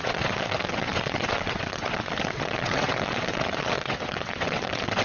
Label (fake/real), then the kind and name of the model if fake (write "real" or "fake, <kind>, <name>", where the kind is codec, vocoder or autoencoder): fake, vocoder, WaveNeXt